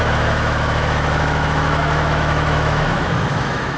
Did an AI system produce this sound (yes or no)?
yes